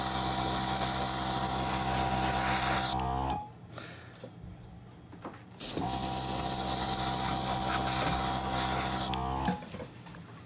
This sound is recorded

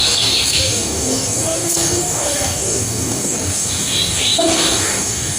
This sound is remade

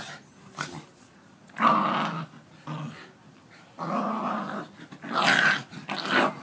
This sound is recorded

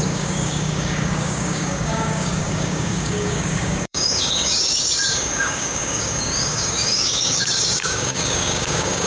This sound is remade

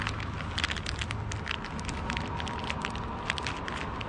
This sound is recorded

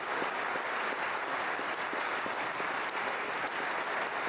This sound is recorded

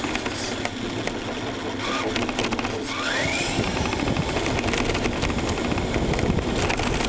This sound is recorded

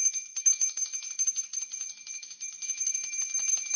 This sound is remade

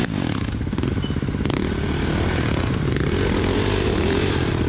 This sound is recorded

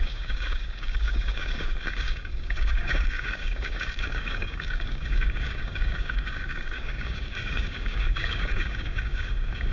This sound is remade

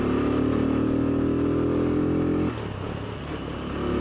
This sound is recorded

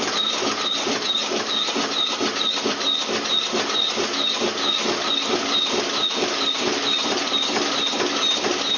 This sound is recorded